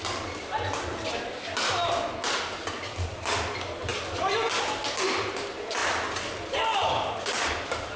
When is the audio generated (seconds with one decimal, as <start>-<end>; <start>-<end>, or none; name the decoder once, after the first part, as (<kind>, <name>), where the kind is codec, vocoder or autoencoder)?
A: none